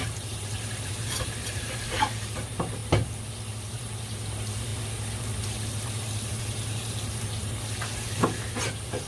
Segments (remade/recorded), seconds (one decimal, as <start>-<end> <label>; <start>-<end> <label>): 0.0-2.8 remade; 2.8-3.6 recorded; 3.6-4.7 remade; 4.7-6.4 recorded; 6.4-9.1 remade